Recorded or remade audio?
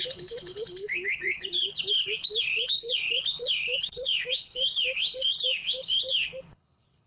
remade